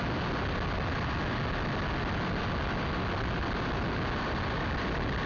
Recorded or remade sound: recorded